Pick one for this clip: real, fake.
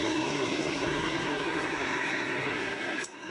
fake